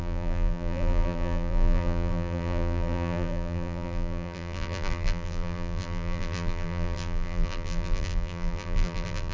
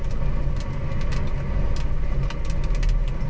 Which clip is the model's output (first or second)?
first